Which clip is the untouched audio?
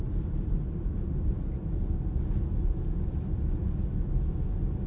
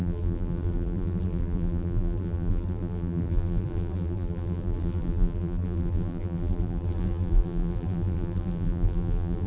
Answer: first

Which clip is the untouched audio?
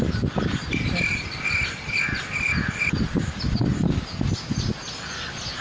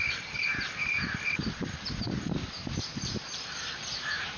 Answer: first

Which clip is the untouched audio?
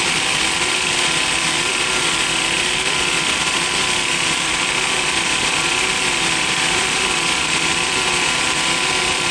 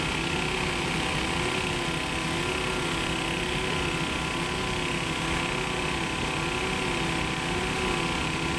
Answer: second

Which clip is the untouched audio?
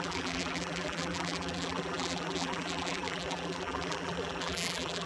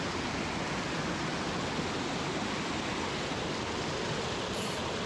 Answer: second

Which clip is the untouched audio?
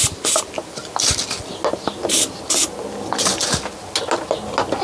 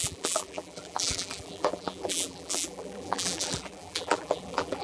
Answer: first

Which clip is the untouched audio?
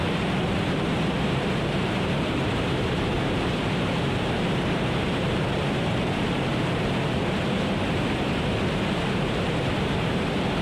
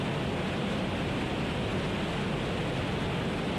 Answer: second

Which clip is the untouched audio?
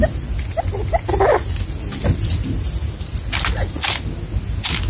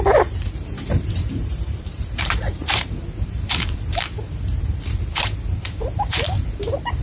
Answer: first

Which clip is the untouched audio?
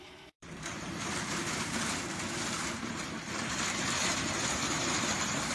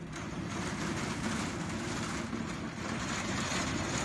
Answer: second